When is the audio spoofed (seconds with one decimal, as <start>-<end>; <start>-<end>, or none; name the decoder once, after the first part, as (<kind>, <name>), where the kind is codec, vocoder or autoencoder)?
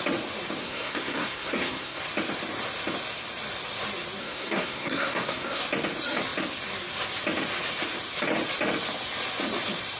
0.6-2.0 (codec, SNAC); 4.2-5.6